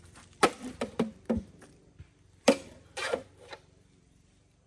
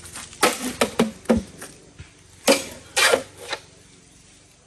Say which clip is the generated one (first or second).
first